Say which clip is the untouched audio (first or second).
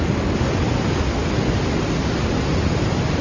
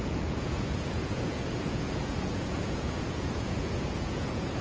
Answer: first